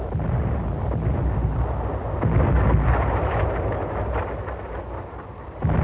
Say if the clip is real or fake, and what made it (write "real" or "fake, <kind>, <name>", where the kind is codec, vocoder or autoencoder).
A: real